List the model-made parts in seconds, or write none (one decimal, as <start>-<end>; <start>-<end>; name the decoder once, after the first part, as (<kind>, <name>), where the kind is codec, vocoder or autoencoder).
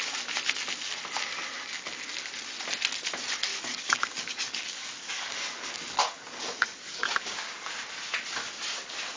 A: 3.5-7.7 (codec, DAC)